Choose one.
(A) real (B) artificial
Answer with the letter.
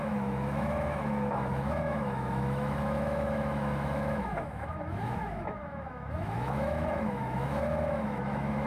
B